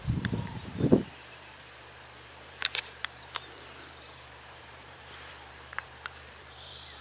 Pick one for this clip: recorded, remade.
remade